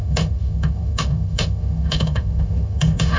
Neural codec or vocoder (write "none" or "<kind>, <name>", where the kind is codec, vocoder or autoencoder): autoencoder, DAC-VAE